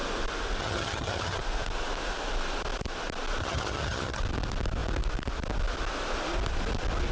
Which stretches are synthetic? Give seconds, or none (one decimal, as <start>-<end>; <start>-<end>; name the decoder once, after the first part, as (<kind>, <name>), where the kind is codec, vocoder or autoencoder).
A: 0.6-1.4 (vocoder, HiFi-GAN); 3.4-4.2